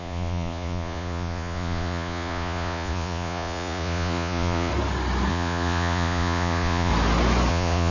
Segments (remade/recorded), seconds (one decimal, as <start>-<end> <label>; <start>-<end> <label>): 0.0-4.7 remade; 4.7-5.3 recorded; 5.3-6.9 remade; 6.9-7.5 recorded; 7.5-7.9 remade